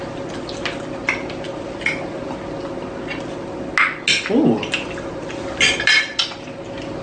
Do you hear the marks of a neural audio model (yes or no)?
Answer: no